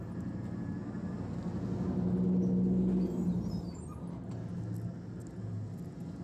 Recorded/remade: recorded